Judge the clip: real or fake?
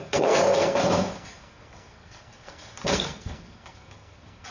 fake